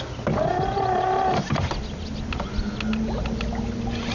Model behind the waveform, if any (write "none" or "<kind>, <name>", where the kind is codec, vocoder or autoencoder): none